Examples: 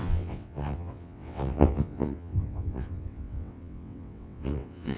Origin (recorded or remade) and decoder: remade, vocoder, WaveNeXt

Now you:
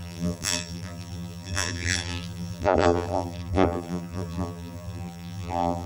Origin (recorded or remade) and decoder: remade, vocoder, BigVGAN v2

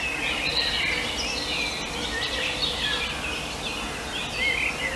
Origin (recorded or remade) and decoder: recorded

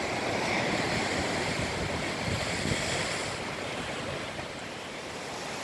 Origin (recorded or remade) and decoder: recorded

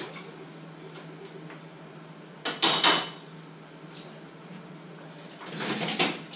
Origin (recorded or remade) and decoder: recorded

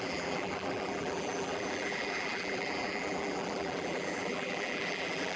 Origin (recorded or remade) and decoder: remade, vocoder, BigVGAN v2